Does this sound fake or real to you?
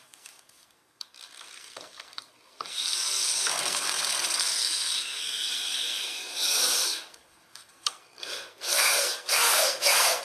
fake